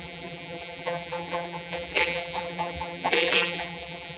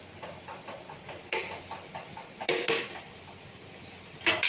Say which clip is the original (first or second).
second